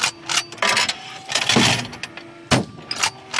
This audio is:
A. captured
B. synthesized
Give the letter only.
A